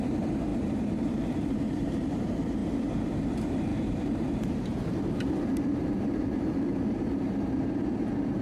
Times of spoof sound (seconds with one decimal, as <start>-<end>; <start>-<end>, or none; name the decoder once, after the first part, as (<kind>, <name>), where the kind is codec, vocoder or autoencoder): 0.0-8.4 (vocoder, BigVGAN v2)